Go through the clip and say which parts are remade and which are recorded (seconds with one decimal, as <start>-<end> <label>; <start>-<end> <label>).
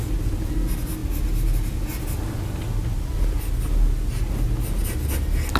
0.0-5.6 recorded